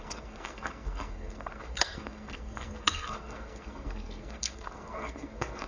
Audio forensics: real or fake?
fake